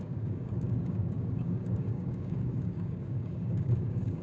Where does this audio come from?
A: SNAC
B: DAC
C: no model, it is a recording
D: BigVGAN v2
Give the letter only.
B